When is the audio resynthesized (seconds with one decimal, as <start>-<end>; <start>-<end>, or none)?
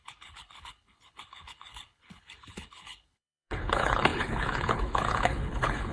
0.0-5.9